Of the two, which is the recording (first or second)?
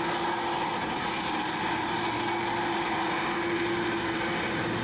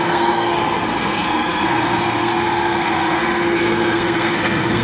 first